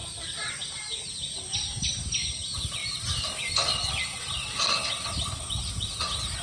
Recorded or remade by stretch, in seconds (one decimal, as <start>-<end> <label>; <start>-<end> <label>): 0.0-6.4 recorded

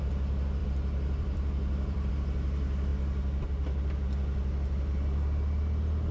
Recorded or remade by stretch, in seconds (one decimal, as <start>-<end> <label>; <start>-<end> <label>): 0.0-0.6 recorded; 0.6-2.1 remade; 2.1-6.1 recorded

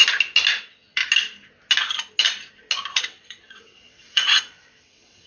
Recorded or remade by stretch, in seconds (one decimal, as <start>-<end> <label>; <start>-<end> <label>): 0.0-0.6 recorded; 0.6-1.0 remade; 1.0-3.0 recorded; 3.0-5.3 remade

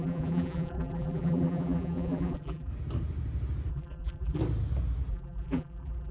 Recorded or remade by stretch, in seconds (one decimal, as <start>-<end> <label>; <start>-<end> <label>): 0.0-2.7 remade; 2.7-3.7 recorded; 3.7-4.4 remade; 4.4-5.1 recorded; 5.1-6.1 remade